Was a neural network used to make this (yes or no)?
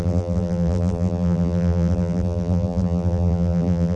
yes